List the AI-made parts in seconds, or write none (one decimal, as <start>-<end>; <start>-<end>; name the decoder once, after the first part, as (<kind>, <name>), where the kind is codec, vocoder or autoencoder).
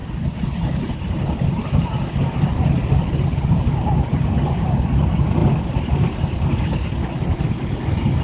2.1-8.2 (vocoder, BigVGAN v2)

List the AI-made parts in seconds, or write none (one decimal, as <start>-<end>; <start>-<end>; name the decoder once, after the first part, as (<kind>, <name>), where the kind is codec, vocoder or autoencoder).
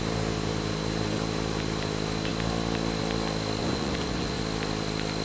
3.6-4.4 (vocoder, Vocos)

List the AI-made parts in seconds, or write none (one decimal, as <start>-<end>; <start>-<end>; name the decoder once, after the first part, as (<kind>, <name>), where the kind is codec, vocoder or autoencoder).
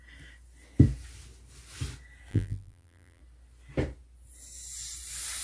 2.3-3.2 (vocoder, BigVGAN v2)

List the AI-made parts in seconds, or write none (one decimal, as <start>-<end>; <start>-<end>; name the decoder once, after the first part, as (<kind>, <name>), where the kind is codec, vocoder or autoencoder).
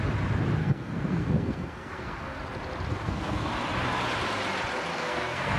0.6-2.4 (codec, SNAC); 2.9-3.5; 4.9-5.6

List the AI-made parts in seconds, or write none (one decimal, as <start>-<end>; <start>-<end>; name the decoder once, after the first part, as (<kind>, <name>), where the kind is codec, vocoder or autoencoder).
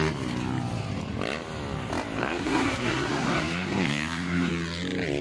2.2-4.5 (codec, SNAC)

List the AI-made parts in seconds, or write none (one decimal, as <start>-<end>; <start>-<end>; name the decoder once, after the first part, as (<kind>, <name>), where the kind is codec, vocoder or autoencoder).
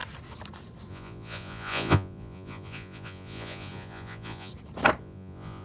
0.9-4.5 (vocoder, Vocos); 5.0-5.6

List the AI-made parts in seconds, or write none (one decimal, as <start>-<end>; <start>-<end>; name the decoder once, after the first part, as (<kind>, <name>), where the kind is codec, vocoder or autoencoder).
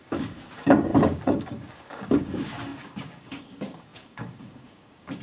0.0-5.2 (codec, DAC)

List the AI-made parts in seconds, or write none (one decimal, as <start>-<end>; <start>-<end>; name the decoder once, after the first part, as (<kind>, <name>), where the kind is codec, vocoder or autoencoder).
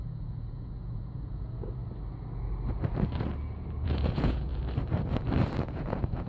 0.0-1.8 (vocoder, Vocos); 3.8-4.5; 5.7-6.3